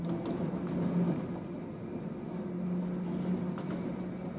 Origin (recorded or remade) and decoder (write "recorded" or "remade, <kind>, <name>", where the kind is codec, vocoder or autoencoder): recorded